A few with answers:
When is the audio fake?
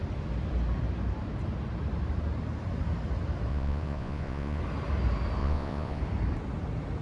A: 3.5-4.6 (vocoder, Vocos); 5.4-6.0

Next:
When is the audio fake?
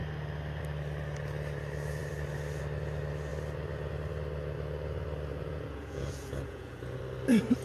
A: 5.3-7.0 (vocoder, Vocos)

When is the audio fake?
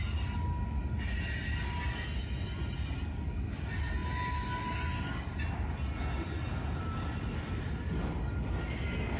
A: none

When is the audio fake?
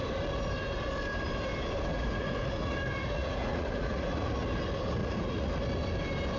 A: 1.9-4.4 (vocoder, Vocos); 5.0-5.5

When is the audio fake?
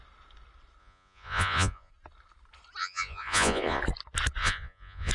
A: 0.8-1.9 (vocoder, Vocos); 2.8-3.8; 4.4-5.1